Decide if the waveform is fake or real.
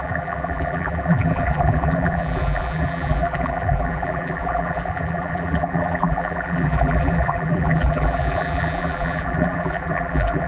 fake